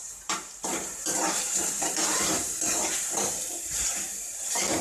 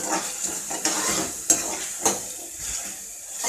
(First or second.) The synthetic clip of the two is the first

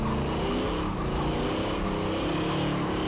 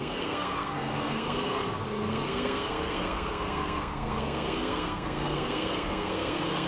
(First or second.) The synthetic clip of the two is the second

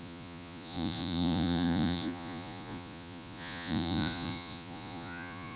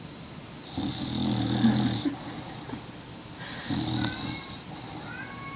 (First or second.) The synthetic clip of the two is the first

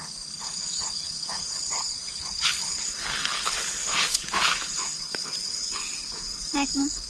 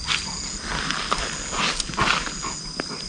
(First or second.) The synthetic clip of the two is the first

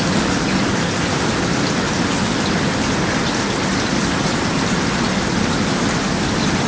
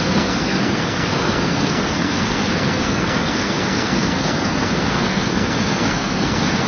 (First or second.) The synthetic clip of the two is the second